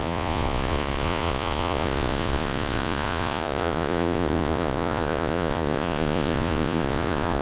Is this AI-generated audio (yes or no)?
yes